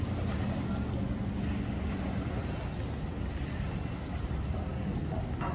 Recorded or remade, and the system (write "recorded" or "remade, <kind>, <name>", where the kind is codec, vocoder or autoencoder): recorded